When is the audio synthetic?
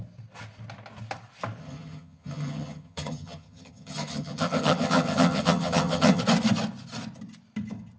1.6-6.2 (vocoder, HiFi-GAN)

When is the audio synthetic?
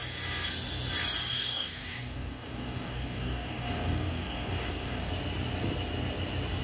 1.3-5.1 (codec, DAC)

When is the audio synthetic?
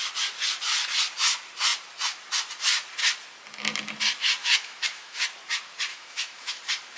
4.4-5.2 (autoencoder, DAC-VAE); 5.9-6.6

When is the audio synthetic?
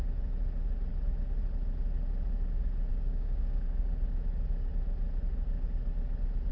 2.9-3.9 (codec, DAC)